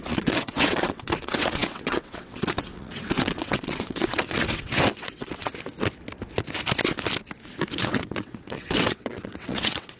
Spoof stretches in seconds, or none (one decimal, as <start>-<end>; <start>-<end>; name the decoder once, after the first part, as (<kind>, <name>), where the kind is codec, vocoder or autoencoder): 0.0-5.5 (vocoder, WaveNeXt); 7.8-10.0